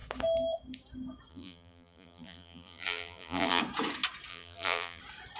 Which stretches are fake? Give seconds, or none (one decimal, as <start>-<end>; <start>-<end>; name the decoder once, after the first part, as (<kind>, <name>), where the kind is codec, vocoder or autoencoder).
1.3-3.6 (vocoder, BigVGAN v2); 4.3-5.0

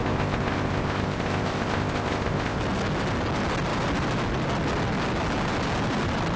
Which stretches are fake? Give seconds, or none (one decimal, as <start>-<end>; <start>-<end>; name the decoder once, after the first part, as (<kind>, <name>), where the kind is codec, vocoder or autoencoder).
0.0-2.6 (codec, ZipCodec)

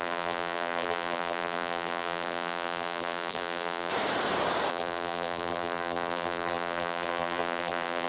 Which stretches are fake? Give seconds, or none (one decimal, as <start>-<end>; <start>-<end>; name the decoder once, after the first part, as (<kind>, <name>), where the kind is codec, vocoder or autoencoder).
0.0-3.9 (vocoder, BigVGAN v2); 4.7-8.1

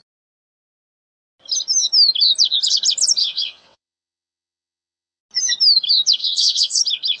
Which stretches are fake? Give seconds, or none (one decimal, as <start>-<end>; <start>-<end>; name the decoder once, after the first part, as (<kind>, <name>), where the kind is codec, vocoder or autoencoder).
3.2-5.2 (vocoder, WaveNeXt); 6.2-6.8

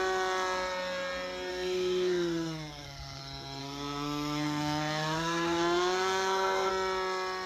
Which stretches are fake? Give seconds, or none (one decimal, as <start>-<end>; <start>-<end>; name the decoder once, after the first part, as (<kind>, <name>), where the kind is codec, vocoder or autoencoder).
1.5-3.2 (codec, SNAC); 3.6-6.7

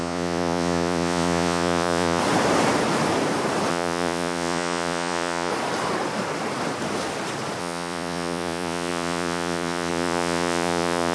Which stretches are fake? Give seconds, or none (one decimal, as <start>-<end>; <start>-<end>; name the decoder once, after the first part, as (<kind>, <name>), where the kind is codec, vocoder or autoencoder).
0.0-2.2 (vocoder, Vocos); 3.7-5.5; 7.6-11.1